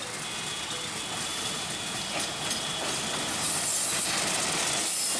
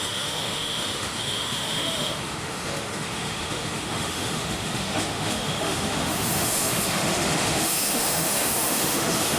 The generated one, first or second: second